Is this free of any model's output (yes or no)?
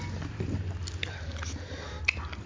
yes